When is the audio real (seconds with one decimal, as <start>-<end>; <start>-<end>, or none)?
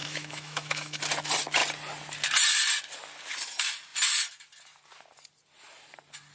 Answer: 1.0-6.3